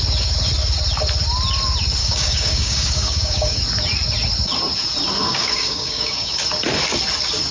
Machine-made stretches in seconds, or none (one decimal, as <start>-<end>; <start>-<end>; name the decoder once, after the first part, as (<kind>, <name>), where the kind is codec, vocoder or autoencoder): 2.0-3.6 (codec, DAC); 5.2-6.4

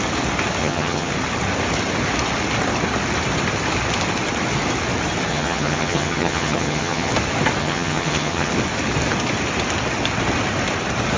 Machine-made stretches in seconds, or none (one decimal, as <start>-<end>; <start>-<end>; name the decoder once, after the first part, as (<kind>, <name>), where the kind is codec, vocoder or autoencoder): 0.6-1.1 (vocoder, HiFi-GAN); 5.3-7.1; 7.6-8.5

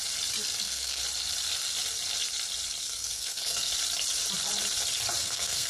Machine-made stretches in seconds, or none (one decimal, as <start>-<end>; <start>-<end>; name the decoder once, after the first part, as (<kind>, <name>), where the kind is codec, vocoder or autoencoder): 0.6-1.0 (codec, SNAC); 2.8-3.7; 5.2-5.7

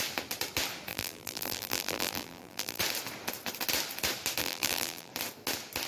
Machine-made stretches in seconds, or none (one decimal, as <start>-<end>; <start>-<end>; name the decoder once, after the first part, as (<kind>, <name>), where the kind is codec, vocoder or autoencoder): 0.9-2.8 (vocoder, BigVGAN v2); 4.4-5.1

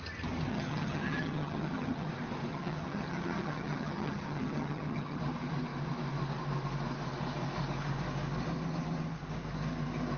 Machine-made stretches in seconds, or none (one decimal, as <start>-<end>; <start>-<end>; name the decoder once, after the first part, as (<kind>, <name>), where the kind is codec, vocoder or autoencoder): 0.5-2.1 (vocoder, HiFi-GAN); 2.5-5.2

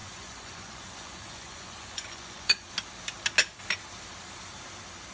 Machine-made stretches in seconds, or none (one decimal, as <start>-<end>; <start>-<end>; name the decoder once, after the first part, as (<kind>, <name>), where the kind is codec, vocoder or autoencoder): 0.0-2.7 (vocoder, Vocos)

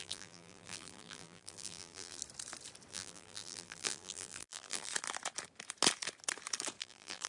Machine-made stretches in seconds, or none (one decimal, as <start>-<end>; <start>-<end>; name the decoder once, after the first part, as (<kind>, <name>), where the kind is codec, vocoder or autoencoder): 0.0-2.2 (vocoder, BigVGAN v2); 2.9-4.9; 6.8-7.3